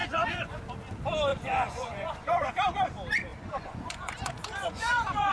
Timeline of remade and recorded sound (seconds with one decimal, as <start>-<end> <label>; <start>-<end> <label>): 0.0-0.6 remade; 0.6-1.3 recorded; 1.3-2.5 remade; 2.5-3.3 recorded; 3.3-5.3 remade